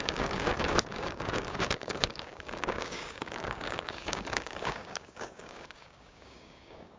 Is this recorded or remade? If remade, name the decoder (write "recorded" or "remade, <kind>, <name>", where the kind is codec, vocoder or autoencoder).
remade, codec, DAC